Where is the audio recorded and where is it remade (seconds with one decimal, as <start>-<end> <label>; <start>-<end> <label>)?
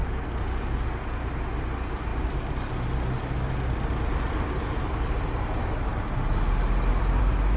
0.0-6.9 recorded; 6.9-7.6 remade